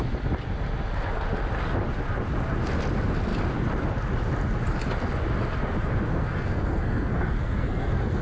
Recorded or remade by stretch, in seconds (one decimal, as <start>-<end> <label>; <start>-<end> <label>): 0.0-6.1 recorded; 6.1-8.2 remade